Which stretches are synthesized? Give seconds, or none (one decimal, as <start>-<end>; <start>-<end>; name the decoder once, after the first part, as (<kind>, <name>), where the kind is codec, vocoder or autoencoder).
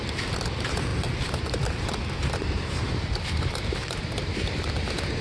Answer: 2.4-4.7 (vocoder, BigVGAN v2)